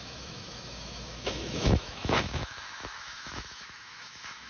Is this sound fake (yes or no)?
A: yes